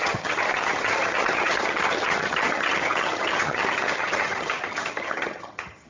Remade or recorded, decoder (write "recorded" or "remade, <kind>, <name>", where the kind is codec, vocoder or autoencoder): remade, vocoder, HiFi-GAN